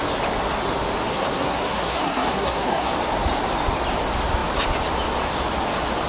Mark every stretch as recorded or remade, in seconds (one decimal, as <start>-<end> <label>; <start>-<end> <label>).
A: 0.0-1.1 recorded; 1.1-2.9 remade; 2.9-6.1 recorded